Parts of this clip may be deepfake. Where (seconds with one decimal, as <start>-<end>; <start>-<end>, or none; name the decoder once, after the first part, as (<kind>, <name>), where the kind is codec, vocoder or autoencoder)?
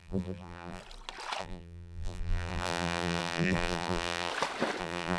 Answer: 0.0-0.8 (vocoder, BigVGAN v2); 1.4-4.3; 4.8-5.2